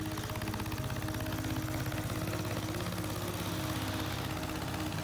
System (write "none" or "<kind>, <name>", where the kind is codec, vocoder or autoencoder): none